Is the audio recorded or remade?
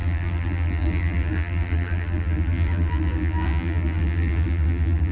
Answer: remade